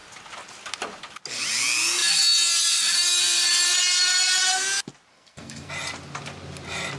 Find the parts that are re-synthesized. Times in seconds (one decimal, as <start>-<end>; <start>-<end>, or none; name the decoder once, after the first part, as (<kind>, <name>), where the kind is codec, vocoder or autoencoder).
5.1-5.7 (codec, SNAC)